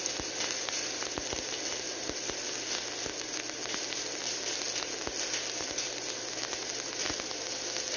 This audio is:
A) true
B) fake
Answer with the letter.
A